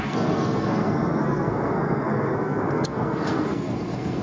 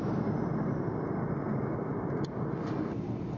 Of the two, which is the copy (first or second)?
first